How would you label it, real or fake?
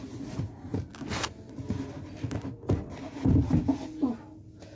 real